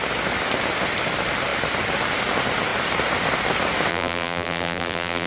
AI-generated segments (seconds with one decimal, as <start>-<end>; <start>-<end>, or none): 3.9-5.3